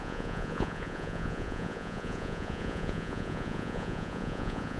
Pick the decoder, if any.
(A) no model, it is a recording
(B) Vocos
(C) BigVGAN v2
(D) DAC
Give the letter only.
B